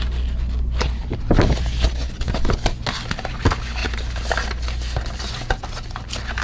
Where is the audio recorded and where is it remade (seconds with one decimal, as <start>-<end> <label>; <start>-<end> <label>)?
0.0-6.4 recorded